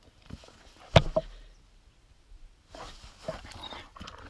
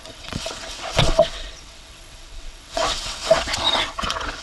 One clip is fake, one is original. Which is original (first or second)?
first